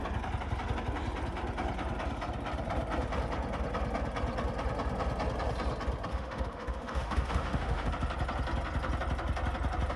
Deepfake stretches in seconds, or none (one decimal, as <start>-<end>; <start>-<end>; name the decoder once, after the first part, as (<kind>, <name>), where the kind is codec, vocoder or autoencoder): 6.1-7.9 (autoencoder, DAC-VAE)